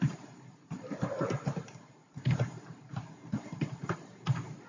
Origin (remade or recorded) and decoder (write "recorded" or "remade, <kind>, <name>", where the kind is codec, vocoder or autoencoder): remade, vocoder, BigVGAN v2